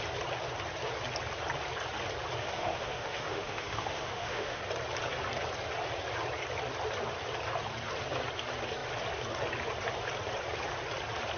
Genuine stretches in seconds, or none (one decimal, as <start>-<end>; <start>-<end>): 0.0-2.4; 4.6-11.4